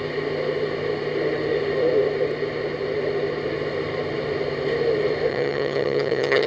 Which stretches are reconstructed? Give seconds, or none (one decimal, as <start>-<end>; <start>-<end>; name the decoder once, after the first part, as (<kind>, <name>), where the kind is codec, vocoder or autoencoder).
5.3-6.5 (vocoder, HiFi-GAN)